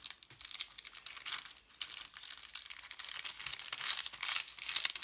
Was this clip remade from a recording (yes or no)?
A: no